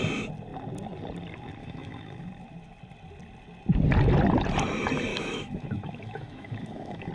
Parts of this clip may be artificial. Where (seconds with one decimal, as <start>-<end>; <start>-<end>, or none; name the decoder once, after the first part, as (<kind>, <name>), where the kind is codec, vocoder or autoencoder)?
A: 1.6-2.3 (autoencoder, DAC-VAE); 5.1-7.1